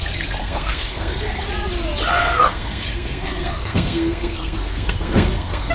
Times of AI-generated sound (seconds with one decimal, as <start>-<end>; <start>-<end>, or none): 0.4-1.5; 2.2-5.7